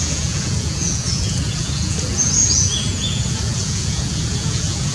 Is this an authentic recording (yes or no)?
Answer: no